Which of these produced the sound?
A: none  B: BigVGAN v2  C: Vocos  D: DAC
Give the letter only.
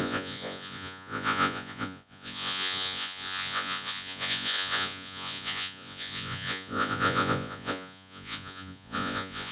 C